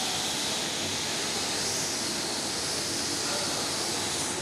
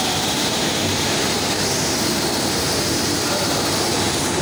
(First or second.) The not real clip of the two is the second